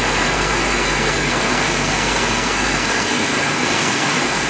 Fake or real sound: fake